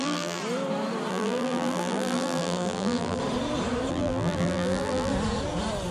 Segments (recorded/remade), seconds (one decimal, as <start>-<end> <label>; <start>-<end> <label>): 0.0-0.4 remade; 0.4-1.1 recorded; 1.1-3.2 remade; 3.2-3.9 recorded; 3.9-5.1 remade; 5.1-5.9 recorded